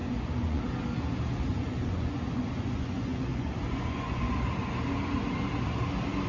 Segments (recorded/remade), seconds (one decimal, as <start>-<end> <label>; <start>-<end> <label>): 0.0-0.6 remade; 0.6-1.5 recorded; 1.5-4.2 remade; 4.2-6.3 recorded